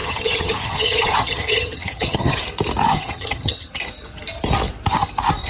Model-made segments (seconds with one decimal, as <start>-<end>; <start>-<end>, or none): 0.0-2.4; 2.8-3.7